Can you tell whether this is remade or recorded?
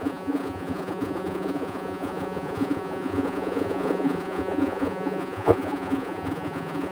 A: remade